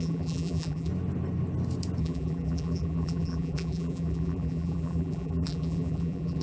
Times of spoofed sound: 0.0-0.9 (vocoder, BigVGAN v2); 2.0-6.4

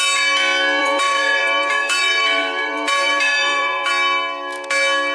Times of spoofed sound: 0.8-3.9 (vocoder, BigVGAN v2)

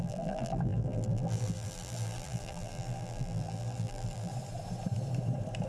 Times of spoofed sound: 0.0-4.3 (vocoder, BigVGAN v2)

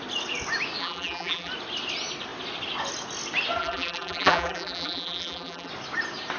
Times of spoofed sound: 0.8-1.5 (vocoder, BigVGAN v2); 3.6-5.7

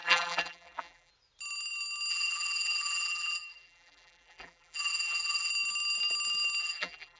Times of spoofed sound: 0.0-1.1 (vocoder, BigVGAN v2); 2.1-5.5; 6.6-7.2

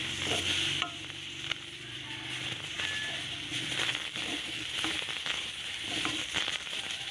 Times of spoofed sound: 0.0-7.1 (vocoder, BigVGAN v2)